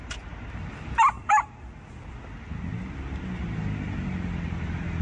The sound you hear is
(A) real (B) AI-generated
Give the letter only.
A